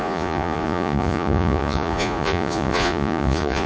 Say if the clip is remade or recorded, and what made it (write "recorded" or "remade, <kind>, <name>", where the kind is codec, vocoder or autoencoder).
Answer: remade, vocoder, Vocos